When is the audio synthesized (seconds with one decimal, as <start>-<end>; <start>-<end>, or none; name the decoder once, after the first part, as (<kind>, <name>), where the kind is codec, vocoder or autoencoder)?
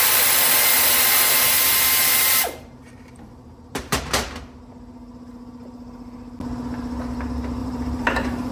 2.1-4.0 (vocoder, BigVGAN v2); 7.6-8.5